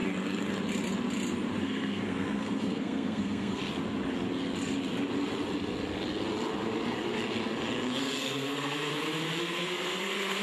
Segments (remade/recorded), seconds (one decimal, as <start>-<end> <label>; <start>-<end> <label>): 0.0-1.6 recorded; 1.6-3.6 remade; 3.6-8.0 recorded; 8.0-8.9 remade; 8.9-9.4 recorded; 9.4-10.4 remade